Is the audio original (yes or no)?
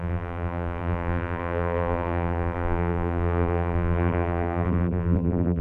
no